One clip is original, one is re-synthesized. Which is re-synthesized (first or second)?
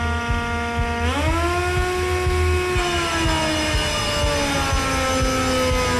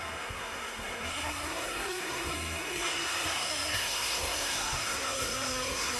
second